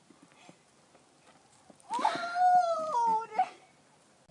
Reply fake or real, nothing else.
real